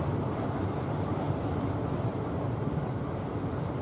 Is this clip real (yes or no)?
no